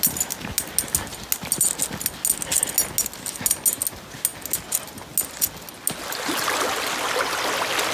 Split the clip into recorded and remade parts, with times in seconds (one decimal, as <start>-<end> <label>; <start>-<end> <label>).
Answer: 0.0-7.9 recorded